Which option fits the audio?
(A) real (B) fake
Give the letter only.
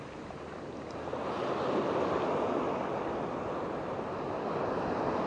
A